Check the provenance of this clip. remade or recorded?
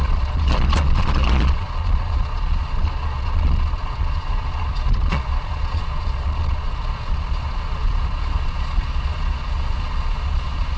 remade